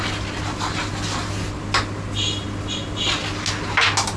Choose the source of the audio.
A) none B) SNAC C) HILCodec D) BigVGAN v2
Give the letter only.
A